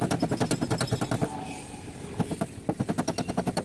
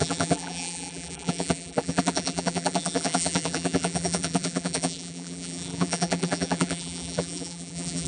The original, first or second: first